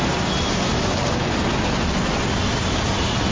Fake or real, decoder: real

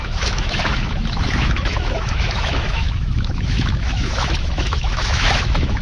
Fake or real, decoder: fake, autoencoder, DAC-VAE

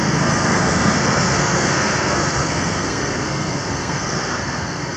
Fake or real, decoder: fake, codec, SNAC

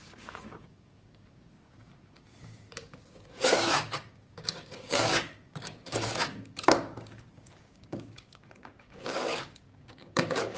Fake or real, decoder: fake, codec, DAC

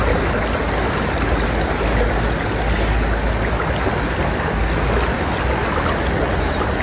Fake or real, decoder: real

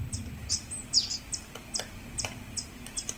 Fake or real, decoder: real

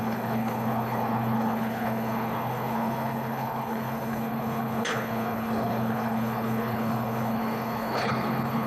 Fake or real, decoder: fake, codec, HILCodec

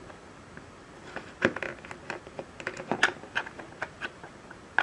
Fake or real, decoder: real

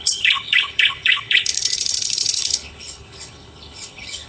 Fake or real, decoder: fake, codec, HILCodec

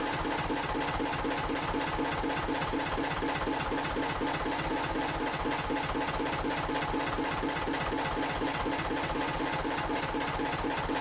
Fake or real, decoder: real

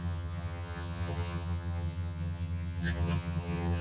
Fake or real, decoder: fake, vocoder, HiFi-GAN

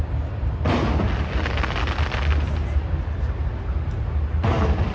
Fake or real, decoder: real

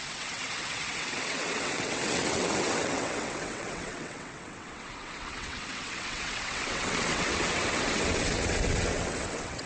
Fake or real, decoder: fake, vocoder, WaveNeXt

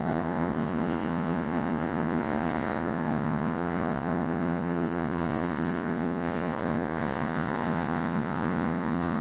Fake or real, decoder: fake, vocoder, Vocos